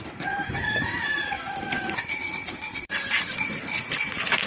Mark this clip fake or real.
fake